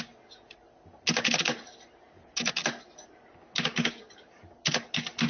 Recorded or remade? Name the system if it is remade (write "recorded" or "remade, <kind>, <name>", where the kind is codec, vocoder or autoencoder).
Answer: recorded